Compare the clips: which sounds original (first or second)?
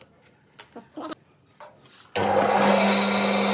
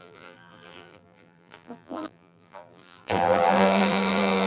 first